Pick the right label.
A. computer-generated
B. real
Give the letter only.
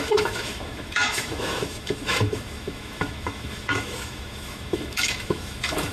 A